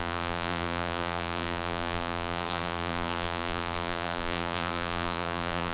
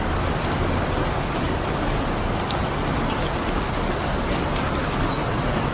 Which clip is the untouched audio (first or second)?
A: second